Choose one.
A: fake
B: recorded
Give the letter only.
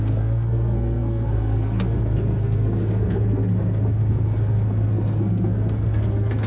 A